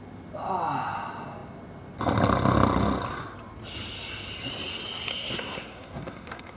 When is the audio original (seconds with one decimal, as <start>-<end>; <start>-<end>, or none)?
0.0-5.1